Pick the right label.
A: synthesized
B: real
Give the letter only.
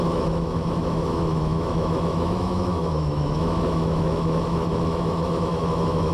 A